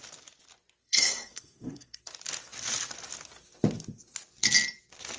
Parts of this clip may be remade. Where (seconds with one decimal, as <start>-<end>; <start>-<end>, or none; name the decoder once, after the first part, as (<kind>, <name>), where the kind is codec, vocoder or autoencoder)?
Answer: 0.8-2.0 (codec, SNAC)